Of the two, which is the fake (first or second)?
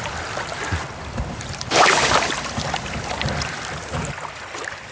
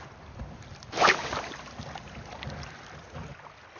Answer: first